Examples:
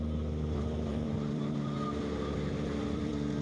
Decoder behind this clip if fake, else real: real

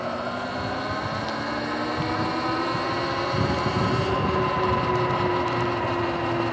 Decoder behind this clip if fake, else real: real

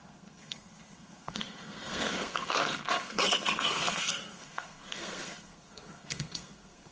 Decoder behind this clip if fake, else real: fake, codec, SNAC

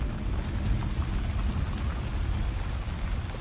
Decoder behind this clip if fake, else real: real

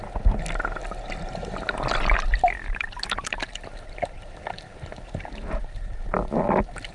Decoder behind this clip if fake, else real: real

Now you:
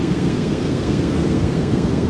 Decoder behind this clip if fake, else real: fake, codec, SNAC